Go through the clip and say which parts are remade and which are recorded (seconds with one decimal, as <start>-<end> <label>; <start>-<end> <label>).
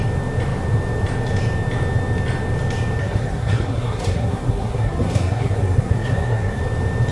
0.0-3.0 recorded; 3.0-6.6 remade; 6.6-7.1 recorded